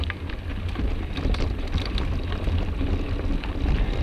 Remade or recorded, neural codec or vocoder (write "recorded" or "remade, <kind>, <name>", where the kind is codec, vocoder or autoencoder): recorded